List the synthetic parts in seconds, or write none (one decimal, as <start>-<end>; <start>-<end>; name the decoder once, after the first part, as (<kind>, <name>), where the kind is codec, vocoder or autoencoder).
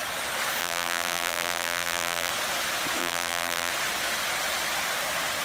0.6-2.3 (vocoder, BigVGAN v2); 3.0-3.7